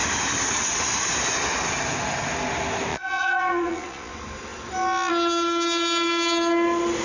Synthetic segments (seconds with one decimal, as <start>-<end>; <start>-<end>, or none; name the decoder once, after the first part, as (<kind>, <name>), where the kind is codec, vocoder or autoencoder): 2.9-4.1 (vocoder, Vocos)